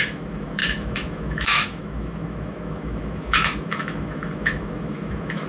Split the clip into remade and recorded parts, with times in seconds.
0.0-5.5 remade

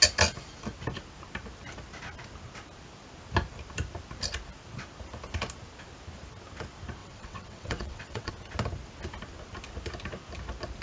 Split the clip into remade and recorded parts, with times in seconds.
0.0-7.0 recorded; 7.0-8.3 remade; 8.3-10.8 recorded

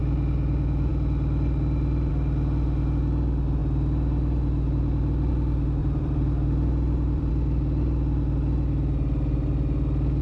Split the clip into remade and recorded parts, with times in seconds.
0.0-5.8 recorded; 5.8-7.3 remade; 7.3-10.2 recorded

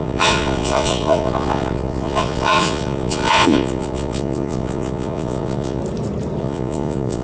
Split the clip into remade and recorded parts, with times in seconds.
0.0-5.8 remade; 5.8-6.4 recorded; 6.4-7.2 remade

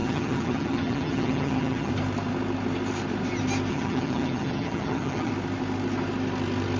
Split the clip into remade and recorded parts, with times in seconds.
0.0-1.9 remade; 1.9-3.7 recorded; 3.7-5.3 remade; 5.3-6.8 recorded

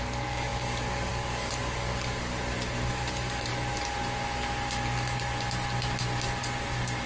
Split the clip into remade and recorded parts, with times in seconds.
0.0-2.3 remade; 2.3-2.9 recorded; 2.9-3.5 remade; 3.5-7.1 recorded

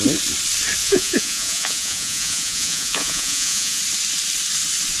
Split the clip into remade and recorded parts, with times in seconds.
0.0-0.8 recorded; 0.8-3.8 remade; 3.8-5.0 recorded

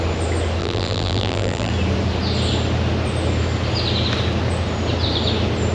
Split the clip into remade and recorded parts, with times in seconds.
0.0-0.6 recorded; 0.6-1.7 remade; 1.7-5.7 recorded